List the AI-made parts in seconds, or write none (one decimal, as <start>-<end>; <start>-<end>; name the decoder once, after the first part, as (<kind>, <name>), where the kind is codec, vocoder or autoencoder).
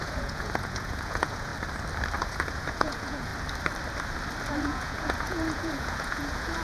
0.0-1.5 (vocoder, Vocos); 2.2-3.3; 4.5-6.6